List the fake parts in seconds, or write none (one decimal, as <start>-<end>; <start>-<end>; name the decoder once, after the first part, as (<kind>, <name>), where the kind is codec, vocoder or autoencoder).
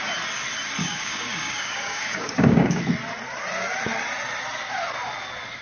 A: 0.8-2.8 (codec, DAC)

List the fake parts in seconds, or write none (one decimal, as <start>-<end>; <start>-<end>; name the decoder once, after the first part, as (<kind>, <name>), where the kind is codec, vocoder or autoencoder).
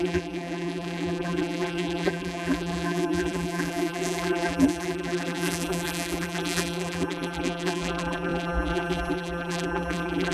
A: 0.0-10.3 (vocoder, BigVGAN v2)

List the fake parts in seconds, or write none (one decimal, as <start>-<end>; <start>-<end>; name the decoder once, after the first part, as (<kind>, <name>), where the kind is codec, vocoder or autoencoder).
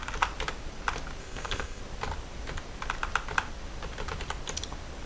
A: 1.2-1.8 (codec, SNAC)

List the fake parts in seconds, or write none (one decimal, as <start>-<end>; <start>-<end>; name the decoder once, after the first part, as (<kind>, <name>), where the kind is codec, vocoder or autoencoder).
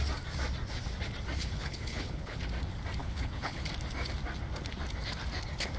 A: 1.4-2.4 (codec, HILCodec); 3.0-3.7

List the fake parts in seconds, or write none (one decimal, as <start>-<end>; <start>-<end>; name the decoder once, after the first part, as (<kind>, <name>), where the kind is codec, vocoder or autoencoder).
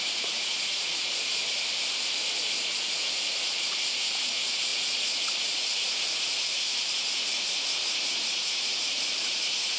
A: 0.0-1.1 (vocoder, Vocos); 2.6-9.8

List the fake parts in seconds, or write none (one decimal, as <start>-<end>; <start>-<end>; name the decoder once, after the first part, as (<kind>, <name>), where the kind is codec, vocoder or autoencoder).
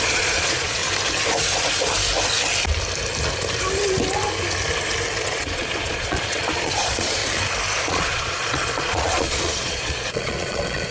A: 0.0-0.8 (vocoder, Vocos); 5.2-7.2; 7.8-10.9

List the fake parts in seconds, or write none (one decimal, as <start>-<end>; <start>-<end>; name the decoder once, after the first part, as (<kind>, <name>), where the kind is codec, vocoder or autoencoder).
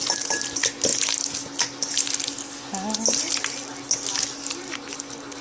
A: none